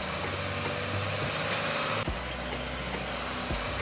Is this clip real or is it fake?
real